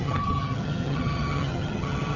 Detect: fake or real fake